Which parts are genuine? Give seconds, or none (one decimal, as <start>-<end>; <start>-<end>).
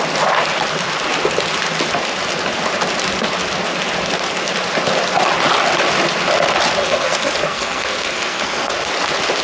0.0-6.8; 8.7-9.4